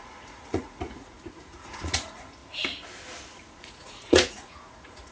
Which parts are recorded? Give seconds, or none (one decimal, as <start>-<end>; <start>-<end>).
2.4-3.6